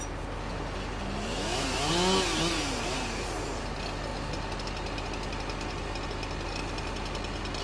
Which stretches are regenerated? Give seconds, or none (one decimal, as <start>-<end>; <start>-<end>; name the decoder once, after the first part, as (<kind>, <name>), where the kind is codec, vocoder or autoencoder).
1.3-1.9 (autoencoder, DAC-VAE)